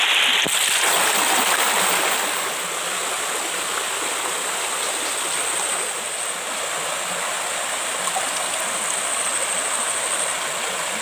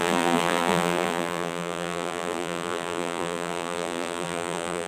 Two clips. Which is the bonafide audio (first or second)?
first